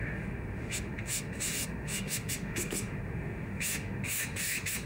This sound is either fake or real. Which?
fake